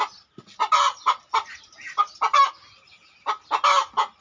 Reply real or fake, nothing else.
real